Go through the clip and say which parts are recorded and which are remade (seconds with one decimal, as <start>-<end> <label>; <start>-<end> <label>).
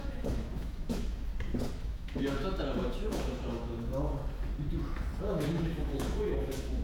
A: 0.0-1.3 remade; 1.3-1.8 recorded; 1.8-4.2 remade; 4.2-5.2 recorded; 5.2-6.8 remade